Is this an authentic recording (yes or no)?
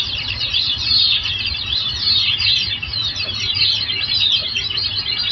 yes